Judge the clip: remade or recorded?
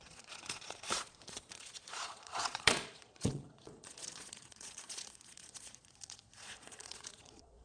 remade